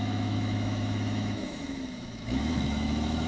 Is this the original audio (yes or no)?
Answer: no